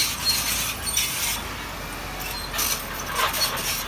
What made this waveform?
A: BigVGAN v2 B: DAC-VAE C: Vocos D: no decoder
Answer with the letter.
D